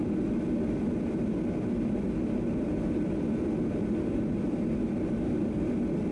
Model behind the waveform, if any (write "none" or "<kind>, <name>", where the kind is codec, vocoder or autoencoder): none